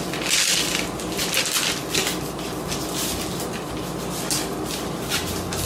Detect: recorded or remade recorded